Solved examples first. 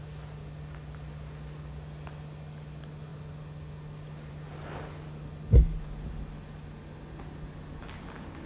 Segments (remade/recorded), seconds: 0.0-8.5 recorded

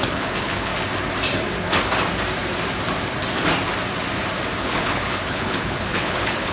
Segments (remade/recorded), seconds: 0.0-0.7 remade; 0.7-4.6 recorded; 4.6-6.5 remade

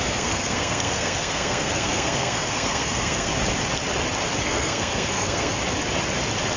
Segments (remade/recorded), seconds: 0.0-3.3 remade; 3.3-4.4 recorded; 4.4-5.6 remade; 5.6-6.6 recorded

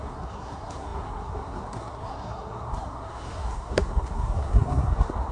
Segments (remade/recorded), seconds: 0.0-5.3 remade

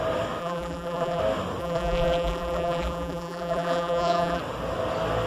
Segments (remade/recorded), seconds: 0.0-0.4 recorded; 0.4-1.2 remade; 1.2-1.6 recorded; 1.6-4.4 remade; 4.4-5.3 recorded